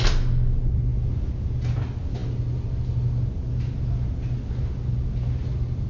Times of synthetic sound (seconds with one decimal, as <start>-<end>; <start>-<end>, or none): none